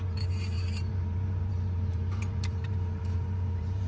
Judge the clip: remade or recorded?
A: remade